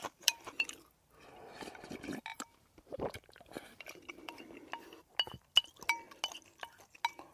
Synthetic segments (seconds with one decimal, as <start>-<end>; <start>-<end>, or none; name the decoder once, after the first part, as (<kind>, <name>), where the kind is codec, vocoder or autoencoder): 0.0-0.8 (vocoder, BigVGAN v2); 2.3-4.4